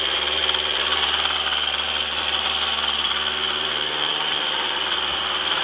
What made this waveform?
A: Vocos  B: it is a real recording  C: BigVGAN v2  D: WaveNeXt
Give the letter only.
A